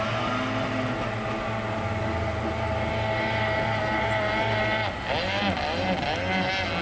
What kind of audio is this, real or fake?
real